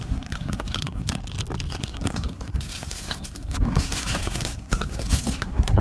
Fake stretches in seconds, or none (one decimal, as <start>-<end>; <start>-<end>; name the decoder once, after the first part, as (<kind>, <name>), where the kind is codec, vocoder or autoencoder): 0.0-1.2 (codec, SNAC); 1.7-5.8